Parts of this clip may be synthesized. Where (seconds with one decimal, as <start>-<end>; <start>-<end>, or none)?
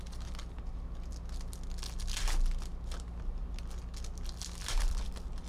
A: 4.6-5.5